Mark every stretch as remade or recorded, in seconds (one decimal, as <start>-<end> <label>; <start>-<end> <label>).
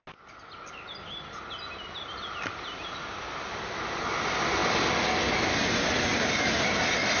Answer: 0.0-7.2 recorded